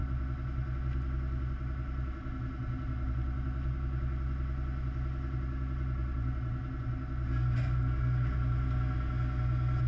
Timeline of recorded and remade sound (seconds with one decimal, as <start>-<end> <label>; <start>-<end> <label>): 0.0-9.9 recorded